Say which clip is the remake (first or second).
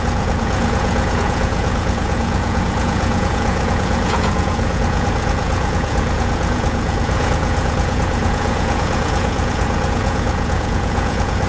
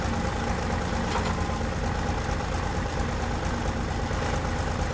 first